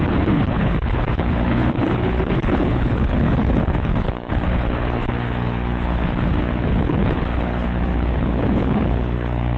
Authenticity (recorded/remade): remade